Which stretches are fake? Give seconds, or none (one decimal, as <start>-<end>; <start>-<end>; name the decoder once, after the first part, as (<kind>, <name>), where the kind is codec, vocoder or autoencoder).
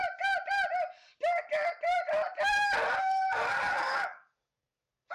3.0-5.1 (codec, DAC)